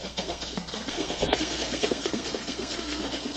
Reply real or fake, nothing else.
fake